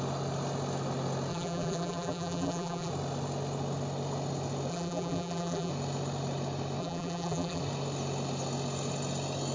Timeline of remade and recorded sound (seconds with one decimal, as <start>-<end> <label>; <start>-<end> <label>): 0.0-1.3 recorded; 1.3-2.9 remade; 2.9-4.7 recorded; 4.7-5.7 remade; 5.7-6.8 recorded; 6.8-7.6 remade; 7.6-9.5 recorded